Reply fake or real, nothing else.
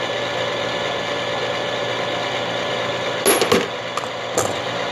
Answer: real